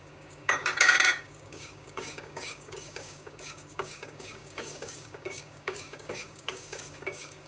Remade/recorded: remade